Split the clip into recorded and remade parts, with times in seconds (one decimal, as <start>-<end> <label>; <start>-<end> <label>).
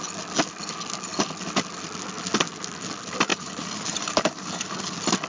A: 0.0-3.3 recorded; 3.3-4.7 remade; 4.7-5.3 recorded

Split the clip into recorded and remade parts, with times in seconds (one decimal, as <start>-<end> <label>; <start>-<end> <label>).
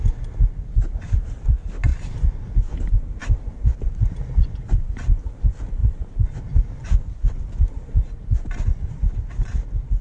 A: 0.0-3.2 recorded; 3.2-4.7 remade; 4.7-10.0 recorded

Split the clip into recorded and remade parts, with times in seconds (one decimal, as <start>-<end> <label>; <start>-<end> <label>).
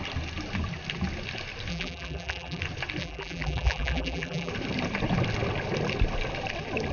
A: 0.0-1.7 recorded; 1.7-2.6 remade; 2.6-3.0 recorded; 3.0-4.5 remade; 4.5-6.9 recorded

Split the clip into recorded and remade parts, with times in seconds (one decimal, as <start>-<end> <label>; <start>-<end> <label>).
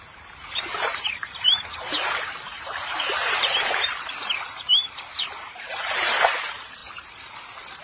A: 0.0-6.8 remade; 6.8-7.8 recorded